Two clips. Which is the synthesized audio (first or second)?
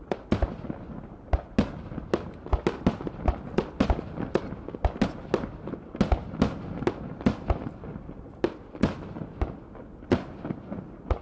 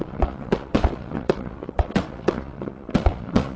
second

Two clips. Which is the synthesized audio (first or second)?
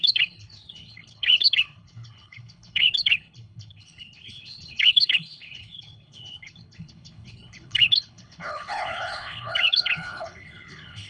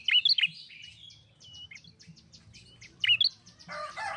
first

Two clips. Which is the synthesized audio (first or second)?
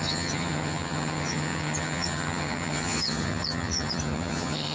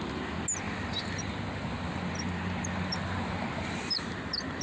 first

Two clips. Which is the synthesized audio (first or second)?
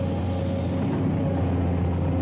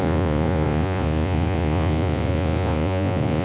second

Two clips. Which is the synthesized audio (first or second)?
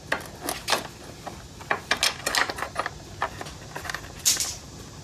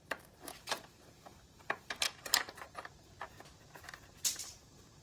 second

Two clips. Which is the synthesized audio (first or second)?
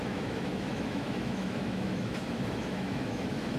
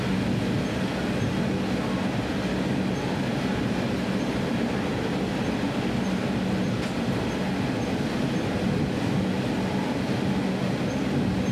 first